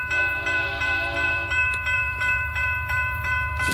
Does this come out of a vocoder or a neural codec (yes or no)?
yes